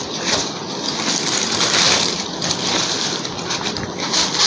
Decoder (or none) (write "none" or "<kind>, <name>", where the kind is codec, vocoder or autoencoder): none